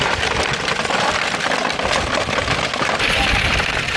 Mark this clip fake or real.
real